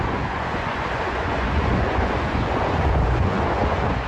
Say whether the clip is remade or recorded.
remade